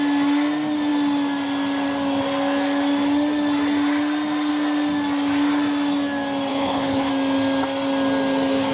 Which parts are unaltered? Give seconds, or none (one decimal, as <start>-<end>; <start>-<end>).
0.0-6.5; 7.1-8.7